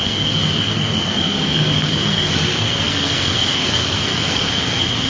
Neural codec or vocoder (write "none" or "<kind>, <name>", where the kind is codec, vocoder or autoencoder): codec, SNAC